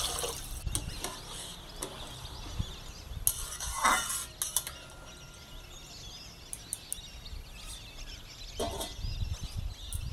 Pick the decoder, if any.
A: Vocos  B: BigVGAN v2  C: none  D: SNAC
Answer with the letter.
C